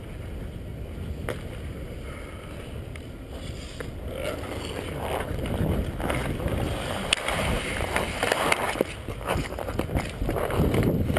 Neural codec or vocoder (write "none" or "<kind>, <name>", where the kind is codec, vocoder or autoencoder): none